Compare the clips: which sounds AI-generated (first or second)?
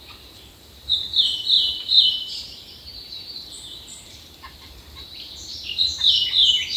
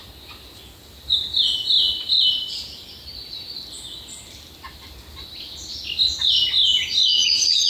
first